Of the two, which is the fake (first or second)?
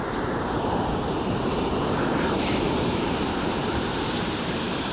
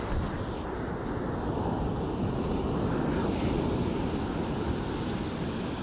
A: first